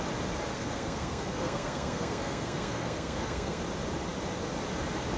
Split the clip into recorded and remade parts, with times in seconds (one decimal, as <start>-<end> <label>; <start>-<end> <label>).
0.0-0.5 recorded; 0.5-3.6 remade; 3.6-5.2 recorded